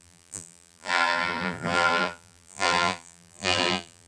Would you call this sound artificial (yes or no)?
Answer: yes